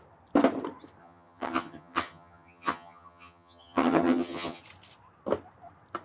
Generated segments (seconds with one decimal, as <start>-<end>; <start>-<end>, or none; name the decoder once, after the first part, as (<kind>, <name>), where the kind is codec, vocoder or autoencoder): 1.0-4.6 (vocoder, HiFi-GAN)